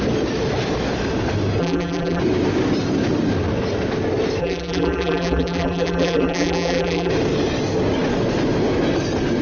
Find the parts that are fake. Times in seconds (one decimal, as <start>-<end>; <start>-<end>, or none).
1.6-2.2; 4.4-7.1